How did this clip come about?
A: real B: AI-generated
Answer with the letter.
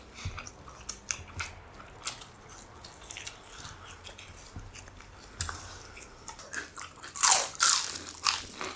A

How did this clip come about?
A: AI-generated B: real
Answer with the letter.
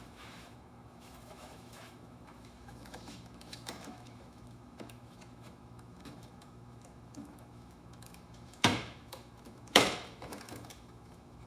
A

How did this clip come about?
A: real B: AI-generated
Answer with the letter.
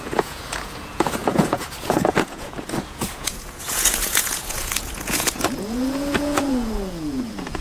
B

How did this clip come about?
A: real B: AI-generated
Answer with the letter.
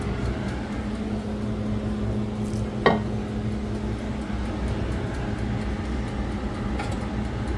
A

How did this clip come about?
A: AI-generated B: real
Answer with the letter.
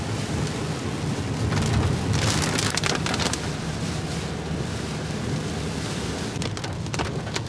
B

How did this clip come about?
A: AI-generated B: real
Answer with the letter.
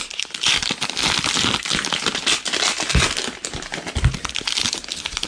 B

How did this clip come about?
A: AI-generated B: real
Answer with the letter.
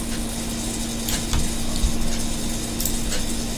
B